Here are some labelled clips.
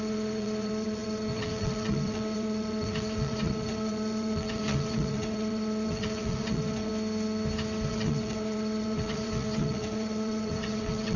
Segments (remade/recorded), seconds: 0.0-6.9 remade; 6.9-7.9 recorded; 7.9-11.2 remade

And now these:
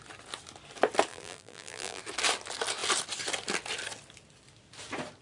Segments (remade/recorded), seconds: 0.0-1.1 recorded; 1.1-2.0 remade; 2.0-5.2 recorded